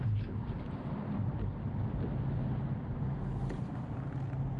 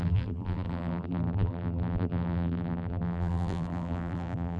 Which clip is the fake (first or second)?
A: second